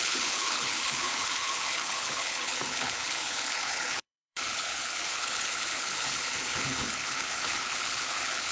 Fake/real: fake